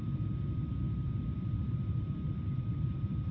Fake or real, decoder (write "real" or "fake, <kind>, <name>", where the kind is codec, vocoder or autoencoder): fake, vocoder, BigVGAN v2